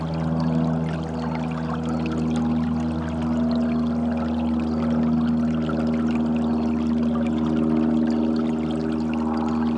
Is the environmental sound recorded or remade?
recorded